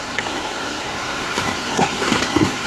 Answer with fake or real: fake